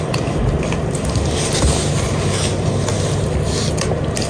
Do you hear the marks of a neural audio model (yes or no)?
no